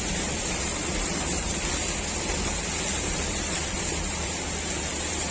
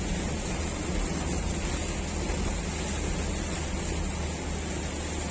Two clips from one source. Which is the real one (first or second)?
second